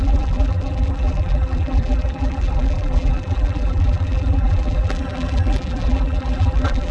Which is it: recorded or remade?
remade